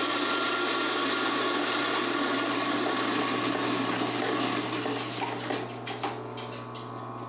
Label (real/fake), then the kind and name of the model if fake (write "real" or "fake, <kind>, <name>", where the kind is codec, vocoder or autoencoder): real